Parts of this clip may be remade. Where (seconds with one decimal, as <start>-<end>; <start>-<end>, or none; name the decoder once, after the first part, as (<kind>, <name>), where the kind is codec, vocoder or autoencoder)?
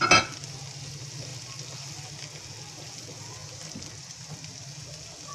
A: 3.4-4.3 (vocoder, BigVGAN v2)